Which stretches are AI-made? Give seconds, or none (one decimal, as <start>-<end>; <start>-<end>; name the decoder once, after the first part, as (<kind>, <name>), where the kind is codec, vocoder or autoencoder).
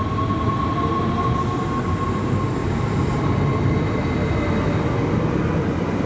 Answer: 2.6-3.3 (vocoder, BigVGAN v2)